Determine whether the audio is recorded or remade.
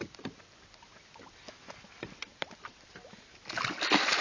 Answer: recorded